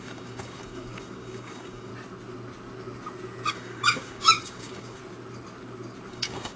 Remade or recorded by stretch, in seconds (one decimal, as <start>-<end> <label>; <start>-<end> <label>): 0.0-1.9 remade; 1.9-3.5 recorded; 3.5-5.0 remade; 5.0-6.1 recorded; 6.1-6.6 remade